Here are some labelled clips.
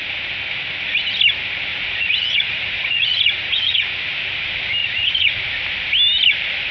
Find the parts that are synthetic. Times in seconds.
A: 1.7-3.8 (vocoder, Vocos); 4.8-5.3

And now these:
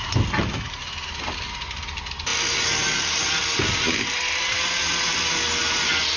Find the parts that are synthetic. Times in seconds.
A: none

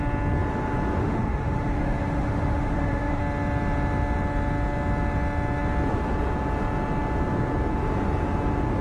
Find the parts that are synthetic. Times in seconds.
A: 1.0-3.2 (autoencoder, DAC-VAE)

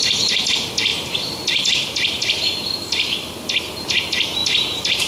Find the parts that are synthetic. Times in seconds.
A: 0.9-4.0 (vocoder, BigVGAN v2); 4.4-5.1